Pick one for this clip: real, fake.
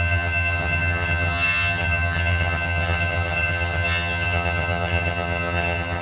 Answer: fake